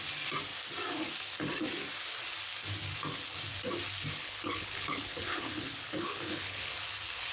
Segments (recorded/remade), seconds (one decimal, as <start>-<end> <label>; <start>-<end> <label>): 0.0-4.1 recorded; 4.1-6.8 remade; 6.8-7.3 recorded